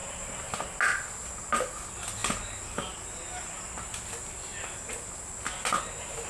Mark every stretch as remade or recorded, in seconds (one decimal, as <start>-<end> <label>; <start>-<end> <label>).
0.0-6.3 recorded